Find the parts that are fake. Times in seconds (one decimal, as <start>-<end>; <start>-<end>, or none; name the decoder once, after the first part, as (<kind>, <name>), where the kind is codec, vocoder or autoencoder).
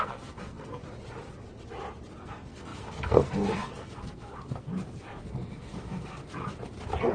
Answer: 0.0-0.8 (codec, SNAC); 2.2-4.7; 5.2-6.2